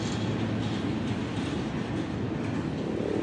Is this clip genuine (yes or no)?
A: yes